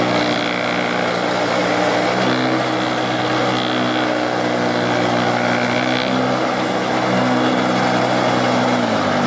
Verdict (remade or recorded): recorded